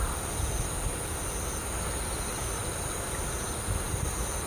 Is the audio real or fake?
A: real